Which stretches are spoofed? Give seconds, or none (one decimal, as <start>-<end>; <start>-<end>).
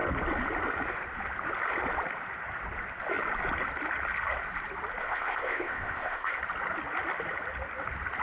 5.0-6.4